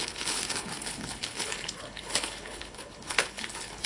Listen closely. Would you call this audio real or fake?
fake